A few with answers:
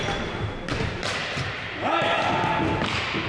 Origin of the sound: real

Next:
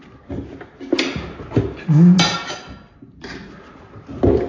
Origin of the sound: real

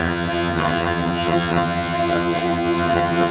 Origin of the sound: fake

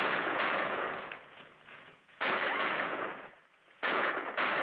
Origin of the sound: fake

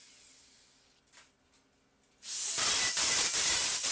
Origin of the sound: real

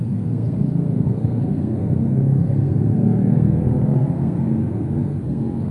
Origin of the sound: fake